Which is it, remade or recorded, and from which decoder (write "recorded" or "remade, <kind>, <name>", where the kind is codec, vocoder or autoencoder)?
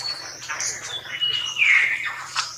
recorded